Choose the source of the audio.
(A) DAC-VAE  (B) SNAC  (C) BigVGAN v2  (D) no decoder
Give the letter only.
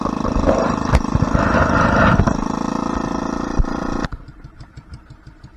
D